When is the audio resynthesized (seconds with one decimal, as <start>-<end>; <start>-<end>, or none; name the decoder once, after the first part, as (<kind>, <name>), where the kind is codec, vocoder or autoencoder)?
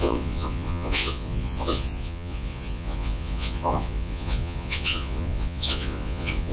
0.0-6.5 (vocoder, Vocos)